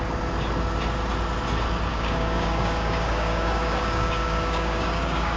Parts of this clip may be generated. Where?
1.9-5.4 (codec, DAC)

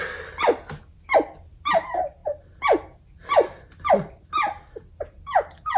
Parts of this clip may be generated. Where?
none

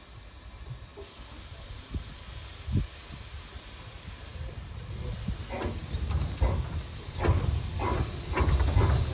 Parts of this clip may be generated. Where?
none

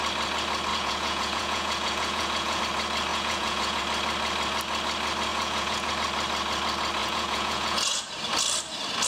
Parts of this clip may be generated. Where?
0.7-2.6 (vocoder, Vocos); 3.1-3.8; 5.3-5.9; 7.0-8.1

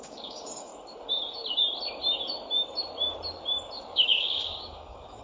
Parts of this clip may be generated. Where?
0.0-0.7 (codec, DAC); 3.8-5.2

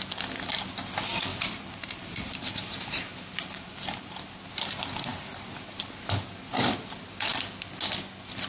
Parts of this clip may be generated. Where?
1.3-4.5 (vocoder, BigVGAN v2)

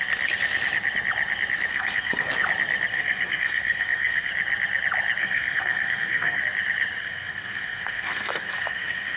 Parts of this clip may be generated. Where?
1.7-2.3 (codec, SNAC); 2.9-4.3; 5.2-6.4; 7.0-9.2